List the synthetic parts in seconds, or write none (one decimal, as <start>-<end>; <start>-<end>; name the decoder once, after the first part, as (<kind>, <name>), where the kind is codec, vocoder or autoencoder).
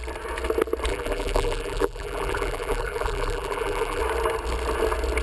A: 0.9-4.0 (vocoder, BigVGAN v2)